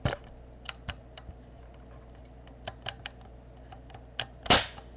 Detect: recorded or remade recorded